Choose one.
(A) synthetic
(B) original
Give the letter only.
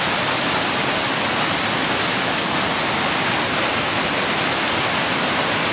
B